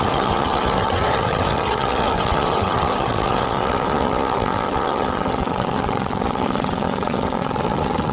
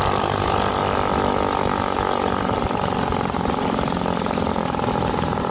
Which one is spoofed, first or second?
first